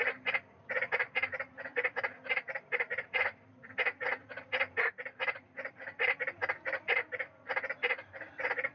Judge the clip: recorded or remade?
recorded